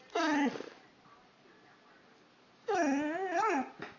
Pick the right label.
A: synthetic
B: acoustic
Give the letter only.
B